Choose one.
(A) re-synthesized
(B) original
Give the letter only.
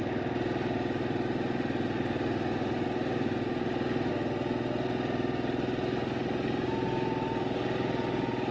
B